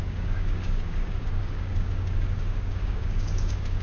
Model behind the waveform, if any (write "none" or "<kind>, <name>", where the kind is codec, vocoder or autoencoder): codec, DAC